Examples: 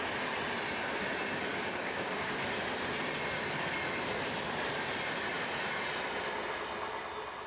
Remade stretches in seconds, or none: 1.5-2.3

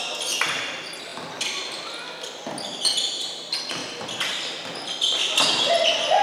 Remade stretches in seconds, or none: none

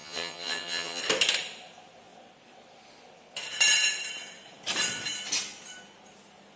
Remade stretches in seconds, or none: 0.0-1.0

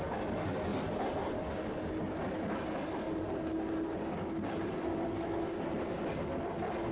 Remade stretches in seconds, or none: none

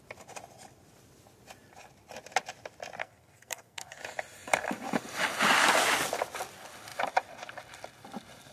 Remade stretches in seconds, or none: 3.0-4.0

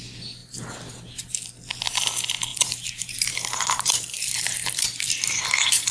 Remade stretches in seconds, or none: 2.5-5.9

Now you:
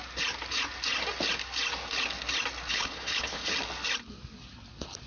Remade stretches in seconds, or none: 2.7-3.5